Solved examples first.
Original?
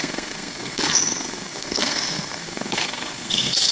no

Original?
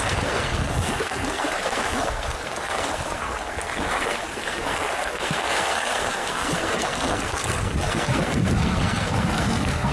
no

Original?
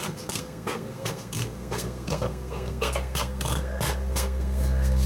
no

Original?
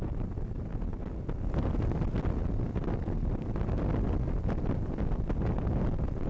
yes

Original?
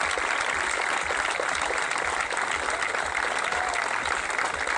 yes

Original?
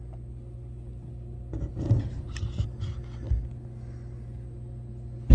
yes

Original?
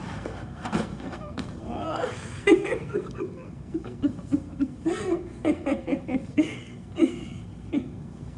no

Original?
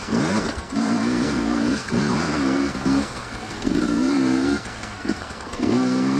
no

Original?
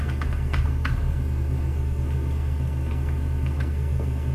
no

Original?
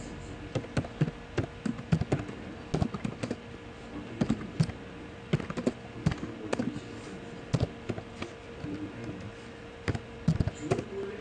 yes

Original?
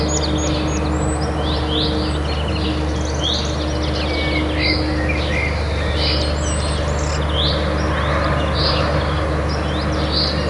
yes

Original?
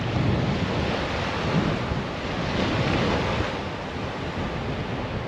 yes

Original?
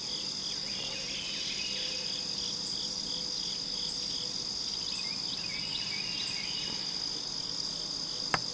yes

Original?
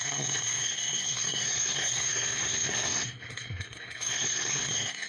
no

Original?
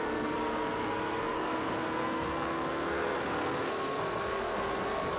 no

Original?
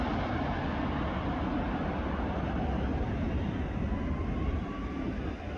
yes